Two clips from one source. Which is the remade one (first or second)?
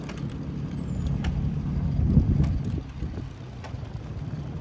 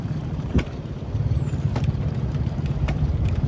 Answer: second